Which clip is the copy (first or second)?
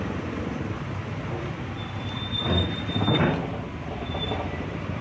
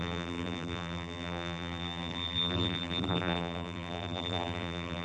second